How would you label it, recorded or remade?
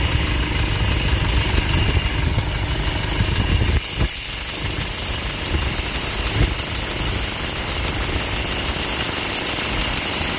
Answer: recorded